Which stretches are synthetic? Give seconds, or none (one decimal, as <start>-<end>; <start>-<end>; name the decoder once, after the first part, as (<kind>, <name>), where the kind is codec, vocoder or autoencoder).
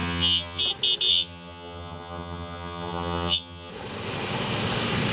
0.0-0.6 (vocoder, HiFi-GAN); 1.1-3.7